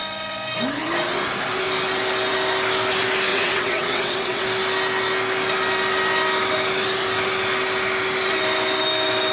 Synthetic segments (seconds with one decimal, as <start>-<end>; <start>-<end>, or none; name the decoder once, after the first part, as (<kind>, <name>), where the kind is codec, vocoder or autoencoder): 3.3-4.4 (vocoder, WaveNeXt)